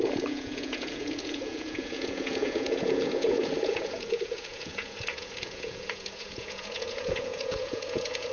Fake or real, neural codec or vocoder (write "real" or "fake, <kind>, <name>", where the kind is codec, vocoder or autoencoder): fake, vocoder, Vocos